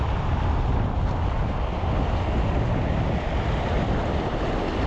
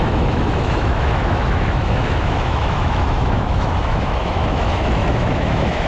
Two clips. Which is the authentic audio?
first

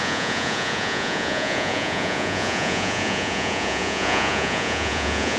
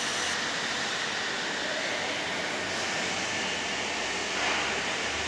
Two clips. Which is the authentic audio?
second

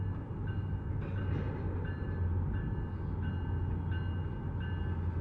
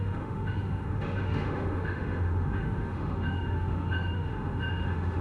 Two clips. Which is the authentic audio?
first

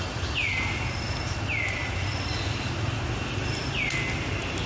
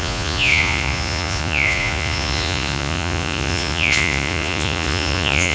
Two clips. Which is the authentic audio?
first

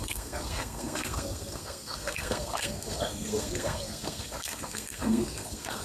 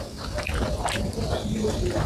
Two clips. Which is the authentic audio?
second